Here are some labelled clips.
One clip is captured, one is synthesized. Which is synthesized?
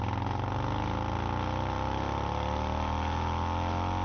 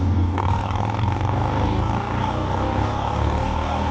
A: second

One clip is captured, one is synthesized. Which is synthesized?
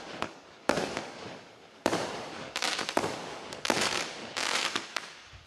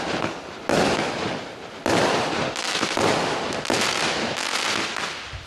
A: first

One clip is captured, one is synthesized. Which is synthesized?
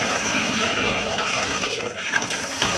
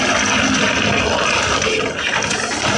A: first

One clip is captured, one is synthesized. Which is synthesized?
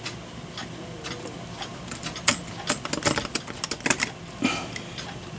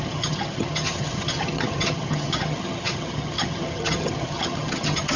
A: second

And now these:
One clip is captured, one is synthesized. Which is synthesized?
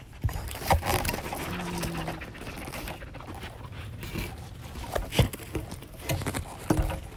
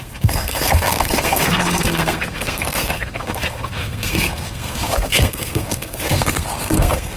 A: second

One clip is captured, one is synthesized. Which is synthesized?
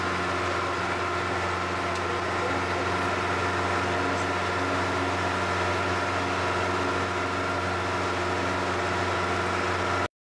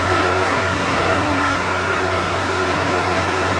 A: second